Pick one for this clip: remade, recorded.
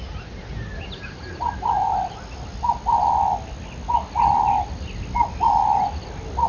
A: recorded